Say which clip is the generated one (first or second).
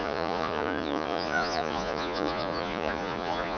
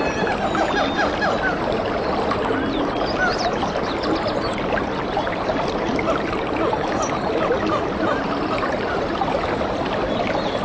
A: first